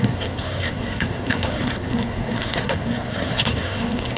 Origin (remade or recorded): remade